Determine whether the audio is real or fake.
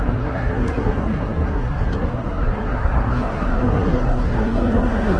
fake